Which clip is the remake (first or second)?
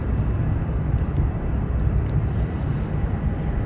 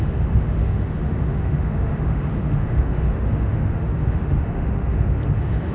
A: second